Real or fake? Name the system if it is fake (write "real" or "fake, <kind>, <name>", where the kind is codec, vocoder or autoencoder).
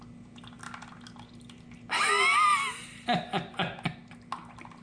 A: real